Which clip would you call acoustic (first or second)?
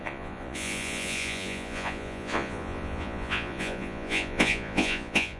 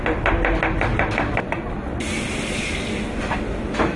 second